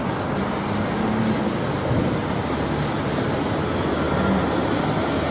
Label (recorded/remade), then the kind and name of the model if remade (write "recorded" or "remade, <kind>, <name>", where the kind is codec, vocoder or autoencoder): recorded